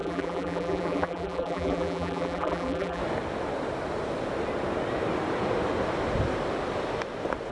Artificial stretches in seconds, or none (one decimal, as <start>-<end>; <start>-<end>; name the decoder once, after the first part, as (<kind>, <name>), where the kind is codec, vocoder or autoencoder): 0.0-3.0 (vocoder, BigVGAN v2)